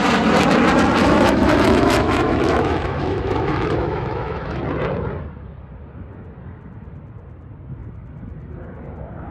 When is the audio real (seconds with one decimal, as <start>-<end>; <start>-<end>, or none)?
0.0-1.0; 4.6-9.3